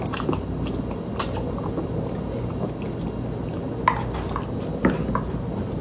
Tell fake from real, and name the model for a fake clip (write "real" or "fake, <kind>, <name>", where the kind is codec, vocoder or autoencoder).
real